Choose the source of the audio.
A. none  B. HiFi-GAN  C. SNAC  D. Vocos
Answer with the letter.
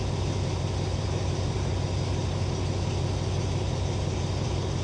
A